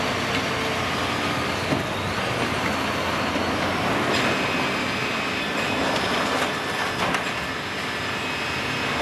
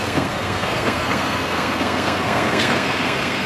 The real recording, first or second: first